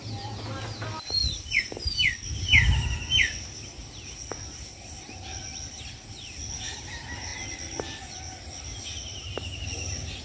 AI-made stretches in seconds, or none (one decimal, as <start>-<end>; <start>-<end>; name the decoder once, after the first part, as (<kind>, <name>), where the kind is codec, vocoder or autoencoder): none